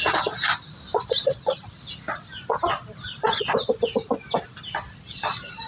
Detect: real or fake real